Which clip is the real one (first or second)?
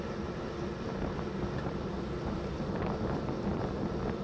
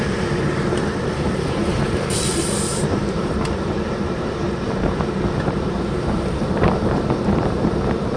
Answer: first